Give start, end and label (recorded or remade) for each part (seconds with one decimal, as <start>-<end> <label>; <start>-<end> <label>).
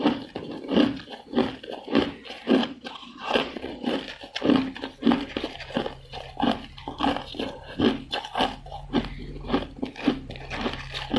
0.0-2.6 recorded; 2.6-3.9 remade; 3.9-11.2 recorded